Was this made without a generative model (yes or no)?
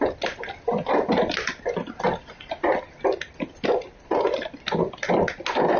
yes